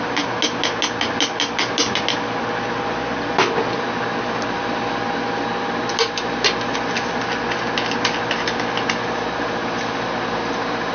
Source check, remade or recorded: recorded